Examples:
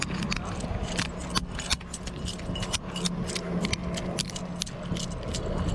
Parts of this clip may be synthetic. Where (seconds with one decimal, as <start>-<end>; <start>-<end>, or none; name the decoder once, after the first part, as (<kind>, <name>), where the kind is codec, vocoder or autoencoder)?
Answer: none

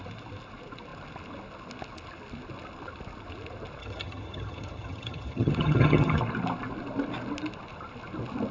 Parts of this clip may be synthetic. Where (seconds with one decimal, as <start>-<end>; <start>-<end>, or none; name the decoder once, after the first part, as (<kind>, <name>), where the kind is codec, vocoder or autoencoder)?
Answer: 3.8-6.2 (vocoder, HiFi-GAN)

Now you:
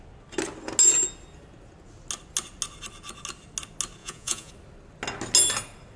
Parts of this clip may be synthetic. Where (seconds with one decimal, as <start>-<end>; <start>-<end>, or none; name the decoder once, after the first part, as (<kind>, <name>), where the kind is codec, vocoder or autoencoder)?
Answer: 4.0-4.5 (vocoder, Vocos)